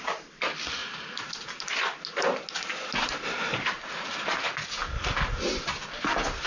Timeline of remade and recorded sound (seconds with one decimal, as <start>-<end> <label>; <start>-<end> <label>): 0.0-0.8 recorded; 0.8-1.3 remade; 1.3-3.5 recorded; 3.5-4.2 remade; 4.2-6.5 recorded